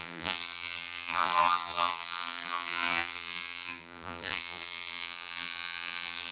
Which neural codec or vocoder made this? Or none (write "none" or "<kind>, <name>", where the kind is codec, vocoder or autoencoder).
vocoder, BigVGAN v2